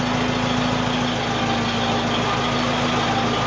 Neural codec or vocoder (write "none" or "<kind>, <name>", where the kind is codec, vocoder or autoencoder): none